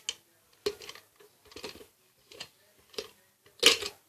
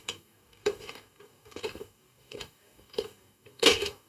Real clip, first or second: first